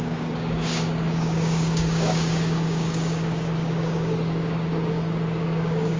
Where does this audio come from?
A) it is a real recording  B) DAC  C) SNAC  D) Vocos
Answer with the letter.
B